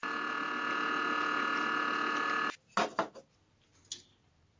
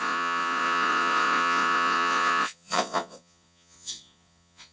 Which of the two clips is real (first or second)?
first